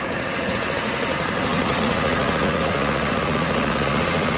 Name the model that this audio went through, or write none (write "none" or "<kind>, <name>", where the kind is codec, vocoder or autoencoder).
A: vocoder, Vocos